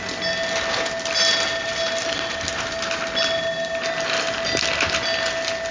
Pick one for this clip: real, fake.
real